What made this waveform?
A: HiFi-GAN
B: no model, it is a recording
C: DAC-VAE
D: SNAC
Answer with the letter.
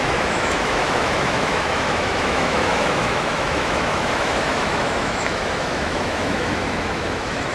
C